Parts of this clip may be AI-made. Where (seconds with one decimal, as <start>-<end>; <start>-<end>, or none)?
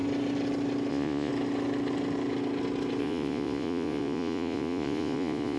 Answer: 0.9-1.3; 3.0-5.6